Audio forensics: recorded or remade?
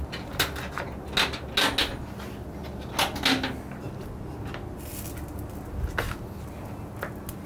recorded